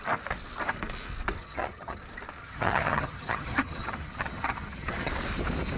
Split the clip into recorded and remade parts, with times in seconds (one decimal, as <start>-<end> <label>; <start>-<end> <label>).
0.0-1.4 recorded; 1.4-2.0 remade; 2.0-2.4 recorded; 2.4-5.1 remade; 5.1-5.8 recorded